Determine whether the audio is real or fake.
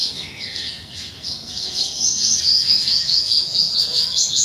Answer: fake